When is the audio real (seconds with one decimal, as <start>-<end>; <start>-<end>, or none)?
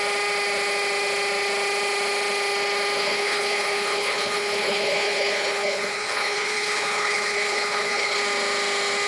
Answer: 0.0-3.0; 8.2-9.1